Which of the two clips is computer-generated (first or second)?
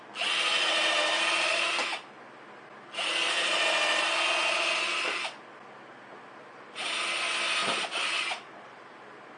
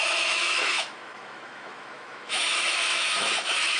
second